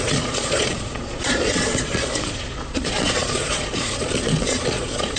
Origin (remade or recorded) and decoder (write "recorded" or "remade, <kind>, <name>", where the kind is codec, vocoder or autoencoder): remade, vocoder, Vocos